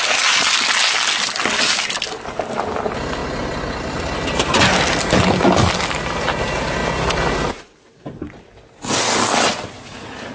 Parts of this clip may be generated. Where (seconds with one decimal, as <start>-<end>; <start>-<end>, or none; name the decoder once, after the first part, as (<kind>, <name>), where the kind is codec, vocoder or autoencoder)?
none